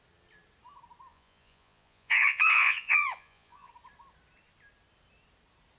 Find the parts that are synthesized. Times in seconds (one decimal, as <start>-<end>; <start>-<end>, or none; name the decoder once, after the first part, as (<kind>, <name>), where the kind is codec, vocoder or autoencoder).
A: 1.1-3.7 (vocoder, Vocos)